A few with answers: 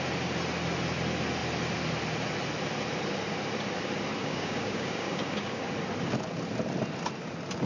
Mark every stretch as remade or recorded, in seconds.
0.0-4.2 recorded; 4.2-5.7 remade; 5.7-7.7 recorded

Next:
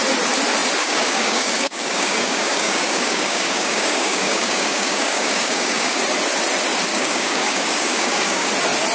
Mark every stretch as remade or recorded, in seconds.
0.0-0.8 recorded; 0.8-6.0 remade; 6.0-6.9 recorded; 6.9-8.5 remade; 8.5-8.9 recorded

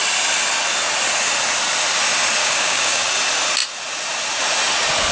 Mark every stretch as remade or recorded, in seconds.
0.0-2.4 recorded; 2.4-3.1 remade; 3.1-5.1 recorded

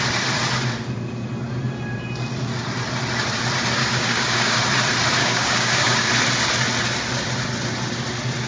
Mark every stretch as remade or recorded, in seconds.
0.0-3.8 recorded; 3.8-4.6 remade; 4.6-5.2 recorded; 5.2-6.1 remade; 6.1-8.5 recorded

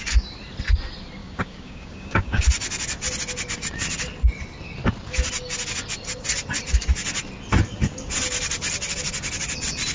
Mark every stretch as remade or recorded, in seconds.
0.0-1.2 recorded; 1.2-2.4 remade; 2.4-9.9 recorded

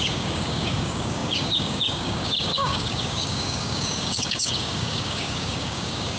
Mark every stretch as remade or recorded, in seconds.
0.0-6.2 remade

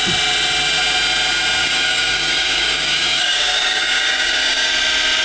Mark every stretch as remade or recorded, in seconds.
0.0-1.6 recorded; 1.6-4.7 remade; 4.7-5.2 recorded

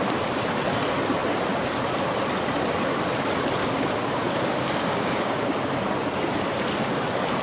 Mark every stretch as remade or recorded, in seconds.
0.0-3.6 recorded; 3.6-5.7 remade; 5.7-7.4 recorded